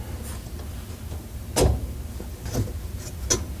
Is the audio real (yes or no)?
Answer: yes